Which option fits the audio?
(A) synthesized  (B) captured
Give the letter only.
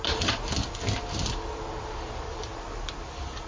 B